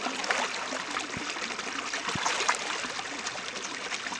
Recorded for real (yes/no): yes